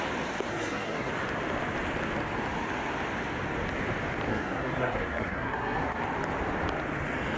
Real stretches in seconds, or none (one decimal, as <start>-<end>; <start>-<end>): 0.0-0.5; 1.1-4.3; 6.0-7.4